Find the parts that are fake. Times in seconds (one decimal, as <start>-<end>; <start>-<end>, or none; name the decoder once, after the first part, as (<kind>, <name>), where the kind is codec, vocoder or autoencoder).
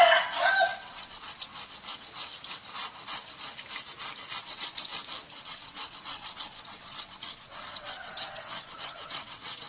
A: 0.0-1.5 (vocoder, WaveNeXt); 4.4-4.9; 5.4-9.7